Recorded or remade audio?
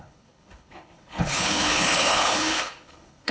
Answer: remade